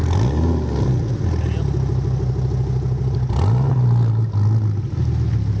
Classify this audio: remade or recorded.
recorded